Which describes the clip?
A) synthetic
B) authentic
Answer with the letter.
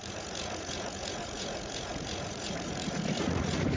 A